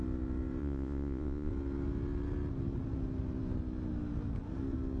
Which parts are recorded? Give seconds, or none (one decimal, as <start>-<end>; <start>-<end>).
0.0-0.6; 1.5-5.0